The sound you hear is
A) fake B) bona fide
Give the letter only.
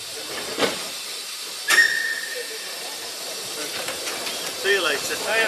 A